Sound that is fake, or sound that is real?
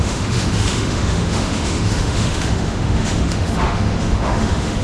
fake